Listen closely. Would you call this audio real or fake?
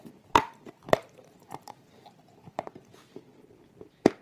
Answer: fake